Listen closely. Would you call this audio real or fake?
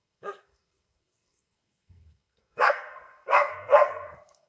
fake